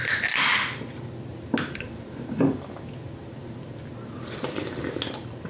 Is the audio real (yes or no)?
yes